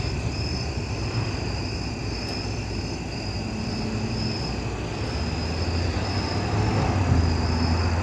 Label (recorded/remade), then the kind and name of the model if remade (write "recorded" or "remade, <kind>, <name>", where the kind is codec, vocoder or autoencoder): recorded